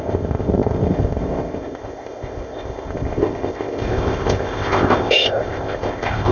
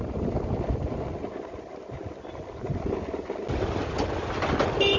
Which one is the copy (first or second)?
first